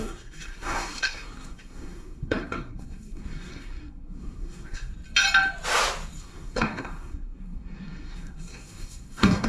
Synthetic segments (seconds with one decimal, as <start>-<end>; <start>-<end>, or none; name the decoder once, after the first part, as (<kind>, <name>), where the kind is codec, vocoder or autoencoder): 0.0-4.9 (codec, SNAC); 6.2-9.5